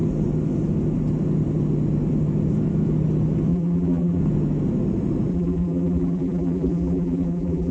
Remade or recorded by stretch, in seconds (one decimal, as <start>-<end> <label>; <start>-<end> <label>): 0.0-3.5 recorded; 3.5-4.2 remade; 4.2-5.3 recorded; 5.3-7.7 remade